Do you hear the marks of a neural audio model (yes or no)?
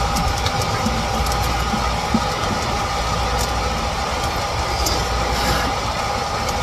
no